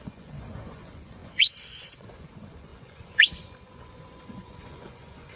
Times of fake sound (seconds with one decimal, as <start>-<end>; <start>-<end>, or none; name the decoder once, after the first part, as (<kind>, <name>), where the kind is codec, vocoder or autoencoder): 0.0-5.4 (vocoder, Vocos)